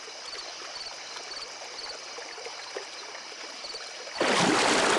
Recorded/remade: recorded